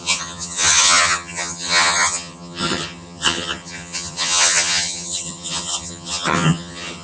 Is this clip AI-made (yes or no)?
yes